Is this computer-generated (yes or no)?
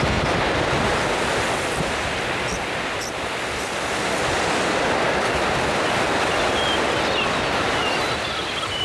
no